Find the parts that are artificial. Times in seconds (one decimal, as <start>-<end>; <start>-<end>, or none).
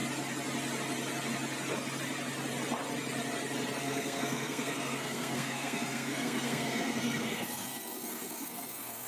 3.8-9.1